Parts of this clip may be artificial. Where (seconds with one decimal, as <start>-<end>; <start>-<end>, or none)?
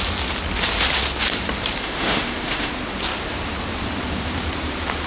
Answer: 1.8-2.7